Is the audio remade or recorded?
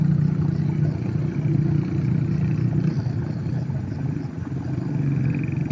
recorded